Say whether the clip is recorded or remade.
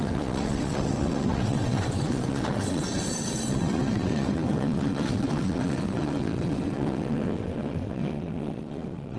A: remade